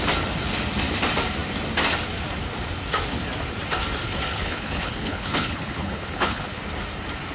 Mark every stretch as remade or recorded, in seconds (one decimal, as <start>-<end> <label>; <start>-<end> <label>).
0.0-4.3 recorded; 4.3-6.6 remade; 6.6-7.3 recorded